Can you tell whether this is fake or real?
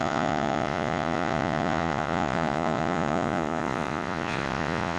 fake